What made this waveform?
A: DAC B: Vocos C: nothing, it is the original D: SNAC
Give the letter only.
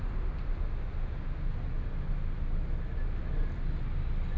C